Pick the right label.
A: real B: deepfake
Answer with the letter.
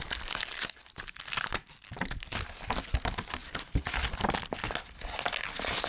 A